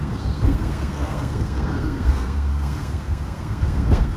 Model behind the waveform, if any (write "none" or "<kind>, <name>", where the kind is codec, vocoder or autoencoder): codec, SNAC